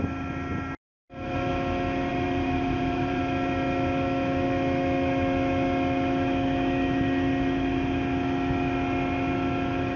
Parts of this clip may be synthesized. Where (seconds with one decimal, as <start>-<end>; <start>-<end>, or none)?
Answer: 0.9-1.5; 2.1-3.2